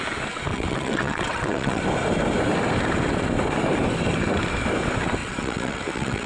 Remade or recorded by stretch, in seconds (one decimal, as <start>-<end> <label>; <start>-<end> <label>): 0.0-0.5 recorded; 0.5-1.8 remade; 1.8-5.2 recorded; 5.2-6.3 remade